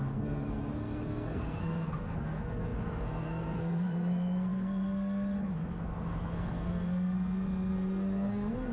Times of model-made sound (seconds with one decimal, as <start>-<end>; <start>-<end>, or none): 0.0-8.7